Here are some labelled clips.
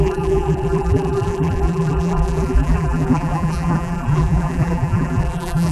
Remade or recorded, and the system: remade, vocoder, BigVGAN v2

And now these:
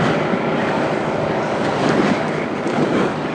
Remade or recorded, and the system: remade, codec, DAC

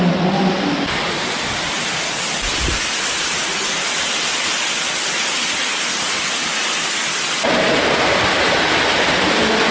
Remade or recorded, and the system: recorded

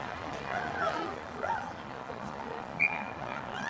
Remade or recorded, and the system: remade, vocoder, Vocos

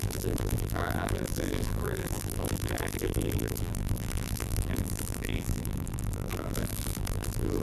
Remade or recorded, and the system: remade, vocoder, BigVGAN v2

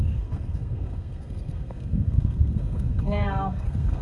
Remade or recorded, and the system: remade, codec, SNAC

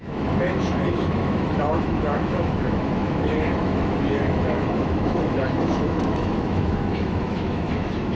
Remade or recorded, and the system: remade, autoencoder, DAC-VAE